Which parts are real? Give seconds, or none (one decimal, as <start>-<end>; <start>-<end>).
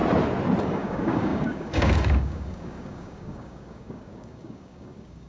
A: 0.0-0.6